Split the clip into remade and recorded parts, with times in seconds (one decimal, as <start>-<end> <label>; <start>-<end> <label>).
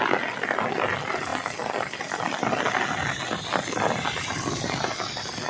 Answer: 0.0-1.3 recorded; 1.3-2.8 remade; 2.8-5.5 recorded